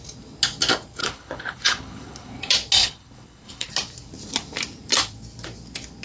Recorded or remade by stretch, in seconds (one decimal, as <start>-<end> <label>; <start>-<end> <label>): 0.0-1.0 recorded; 1.0-2.4 remade; 2.4-2.8 recorded; 2.8-3.7 remade; 3.7-6.0 recorded